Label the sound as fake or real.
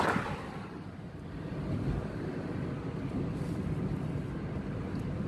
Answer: real